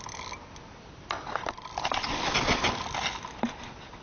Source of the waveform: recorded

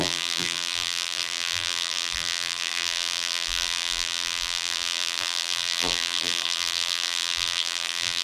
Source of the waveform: remade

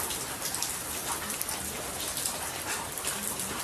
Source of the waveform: recorded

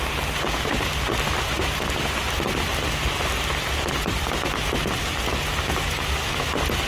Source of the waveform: recorded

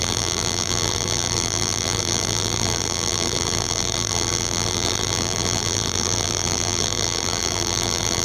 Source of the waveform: remade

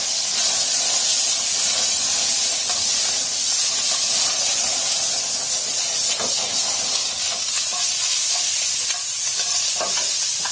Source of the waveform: recorded